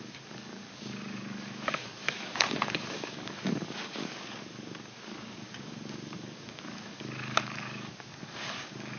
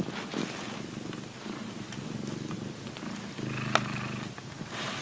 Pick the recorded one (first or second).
second